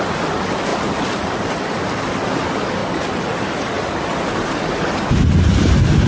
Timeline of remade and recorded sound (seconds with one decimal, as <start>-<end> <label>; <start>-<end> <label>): 0.0-0.7 recorded; 0.7-2.1 remade; 2.1-2.8 recorded; 2.8-4.5 remade; 4.5-6.1 recorded